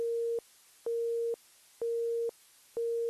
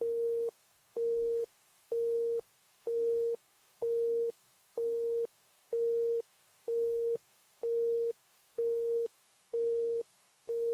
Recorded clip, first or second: first